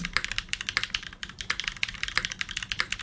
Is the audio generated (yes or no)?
no